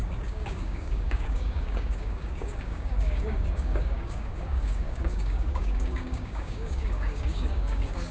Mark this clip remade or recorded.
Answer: remade